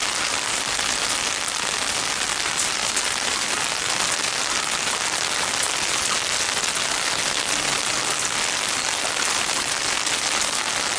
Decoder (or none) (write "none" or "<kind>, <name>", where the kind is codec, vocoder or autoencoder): none